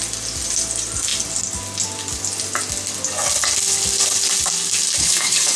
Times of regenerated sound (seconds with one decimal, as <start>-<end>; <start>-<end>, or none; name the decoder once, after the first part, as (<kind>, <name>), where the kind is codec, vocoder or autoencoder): 5.0-5.6 (codec, HILCodec)